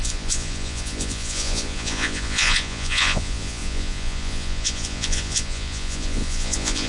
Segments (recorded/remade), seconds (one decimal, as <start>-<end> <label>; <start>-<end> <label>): 0.0-6.9 remade